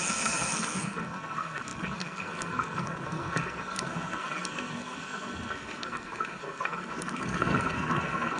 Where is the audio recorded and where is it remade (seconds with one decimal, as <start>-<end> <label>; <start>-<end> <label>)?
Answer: 0.0-8.4 remade